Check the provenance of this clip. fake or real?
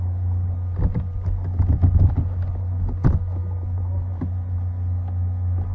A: real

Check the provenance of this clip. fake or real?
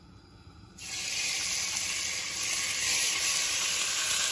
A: real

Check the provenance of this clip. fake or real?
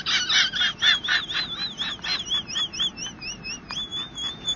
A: real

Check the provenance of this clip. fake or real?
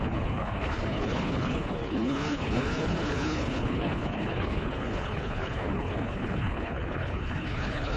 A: fake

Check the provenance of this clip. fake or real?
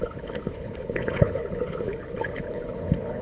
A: fake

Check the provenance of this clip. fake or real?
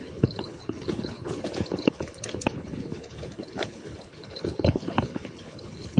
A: fake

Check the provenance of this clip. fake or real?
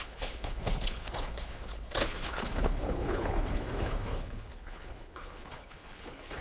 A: fake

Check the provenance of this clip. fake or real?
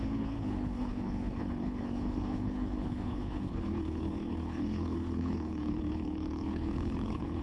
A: fake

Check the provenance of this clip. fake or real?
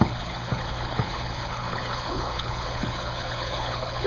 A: fake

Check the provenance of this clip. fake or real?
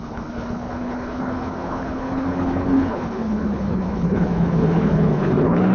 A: fake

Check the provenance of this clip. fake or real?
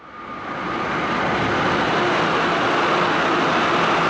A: real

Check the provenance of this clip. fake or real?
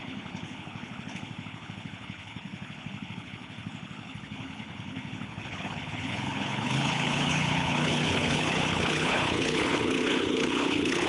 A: fake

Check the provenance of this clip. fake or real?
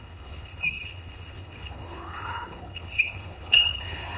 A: fake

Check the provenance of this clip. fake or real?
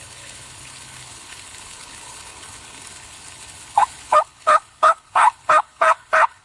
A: fake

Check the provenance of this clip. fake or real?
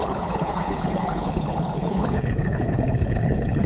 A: fake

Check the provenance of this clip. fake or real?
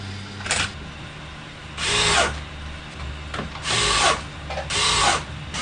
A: real